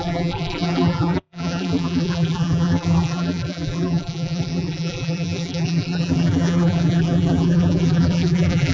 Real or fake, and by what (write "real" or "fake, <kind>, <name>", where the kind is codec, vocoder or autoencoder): fake, vocoder, BigVGAN v2